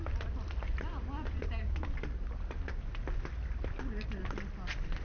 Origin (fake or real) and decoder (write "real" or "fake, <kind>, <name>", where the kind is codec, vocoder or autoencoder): real